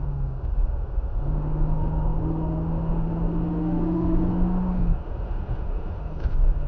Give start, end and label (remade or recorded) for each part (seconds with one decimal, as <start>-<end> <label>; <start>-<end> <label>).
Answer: 0.0-6.7 remade